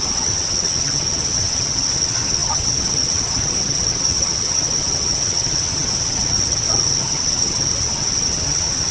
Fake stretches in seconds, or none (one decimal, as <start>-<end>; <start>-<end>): 0.0-8.9